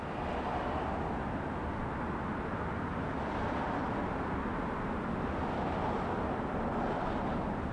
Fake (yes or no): no